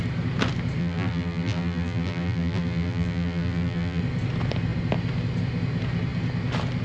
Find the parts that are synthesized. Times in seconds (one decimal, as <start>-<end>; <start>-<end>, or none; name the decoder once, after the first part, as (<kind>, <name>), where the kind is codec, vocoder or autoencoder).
0.8-4.0 (vocoder, BigVGAN v2)